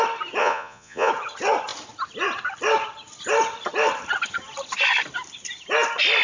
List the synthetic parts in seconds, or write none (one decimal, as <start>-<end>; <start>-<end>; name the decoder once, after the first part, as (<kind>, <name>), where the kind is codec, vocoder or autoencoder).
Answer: 0.4-1.1 (vocoder, Vocos)